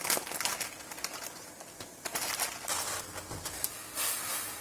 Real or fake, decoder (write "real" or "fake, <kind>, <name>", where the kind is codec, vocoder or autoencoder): real